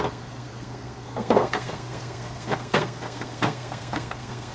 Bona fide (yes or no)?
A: no